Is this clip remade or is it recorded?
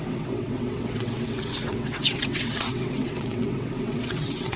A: remade